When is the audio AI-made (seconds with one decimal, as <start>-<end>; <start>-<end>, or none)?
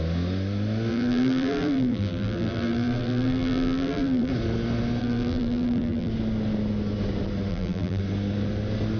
0.9-4.3; 5.0-6.1; 7.5-8.0